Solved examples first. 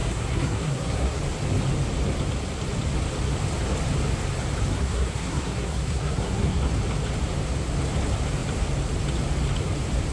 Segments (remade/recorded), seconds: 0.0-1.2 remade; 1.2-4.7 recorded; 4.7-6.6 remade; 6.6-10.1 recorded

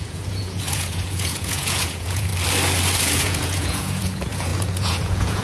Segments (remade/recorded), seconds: 0.0-2.3 remade; 2.3-3.0 recorded; 3.0-5.4 remade